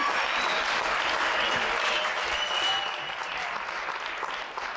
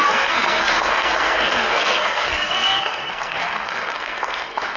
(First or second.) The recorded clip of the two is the first